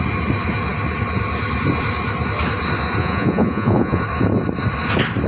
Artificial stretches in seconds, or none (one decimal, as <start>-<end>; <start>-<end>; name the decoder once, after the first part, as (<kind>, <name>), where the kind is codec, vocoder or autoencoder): 3.0-4.0 (vocoder, Vocos)